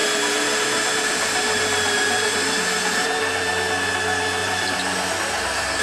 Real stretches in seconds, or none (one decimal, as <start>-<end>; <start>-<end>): 3.5-4.4; 5.1-5.8